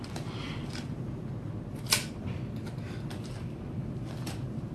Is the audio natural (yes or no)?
yes